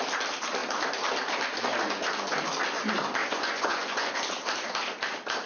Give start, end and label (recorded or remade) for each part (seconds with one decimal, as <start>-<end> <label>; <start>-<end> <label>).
0.0-3.2 recorded; 3.2-4.1 remade; 4.1-5.5 recorded